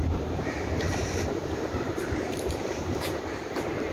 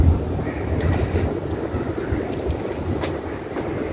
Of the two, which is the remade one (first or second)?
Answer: first